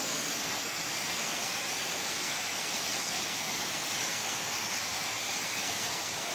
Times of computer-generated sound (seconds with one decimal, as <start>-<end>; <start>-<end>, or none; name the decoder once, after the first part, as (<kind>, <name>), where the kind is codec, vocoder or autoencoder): 0.0-6.3 (codec, SNAC)

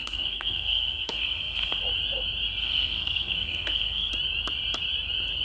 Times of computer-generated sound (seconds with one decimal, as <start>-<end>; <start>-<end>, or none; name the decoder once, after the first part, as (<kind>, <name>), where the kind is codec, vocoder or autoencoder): 0.0-1.8 (codec, SNAC); 2.6-4.1

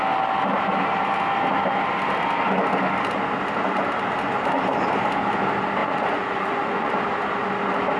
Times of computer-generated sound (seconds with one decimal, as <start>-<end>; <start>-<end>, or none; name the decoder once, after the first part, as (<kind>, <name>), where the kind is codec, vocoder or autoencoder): 5.8-6.9 (vocoder, Vocos)